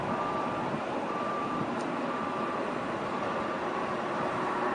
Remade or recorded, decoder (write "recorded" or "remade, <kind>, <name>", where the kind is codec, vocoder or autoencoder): remade, vocoder, BigVGAN v2